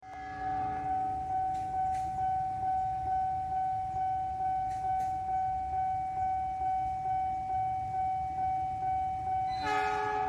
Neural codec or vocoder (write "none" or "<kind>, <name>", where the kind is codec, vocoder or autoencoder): none